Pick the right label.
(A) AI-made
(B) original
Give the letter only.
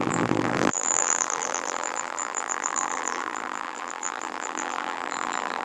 A